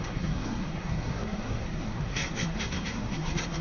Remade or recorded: remade